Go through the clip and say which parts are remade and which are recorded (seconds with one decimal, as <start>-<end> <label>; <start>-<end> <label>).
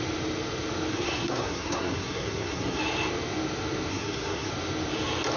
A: 0.0-0.9 recorded; 0.9-2.8 remade; 2.8-3.9 recorded; 3.9-4.5 remade; 4.5-5.4 recorded